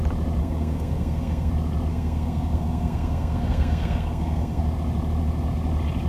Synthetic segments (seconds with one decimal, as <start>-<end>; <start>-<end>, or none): 0.4-1.5; 1.9-4.6